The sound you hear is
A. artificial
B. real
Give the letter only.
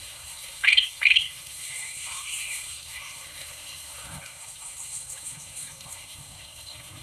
A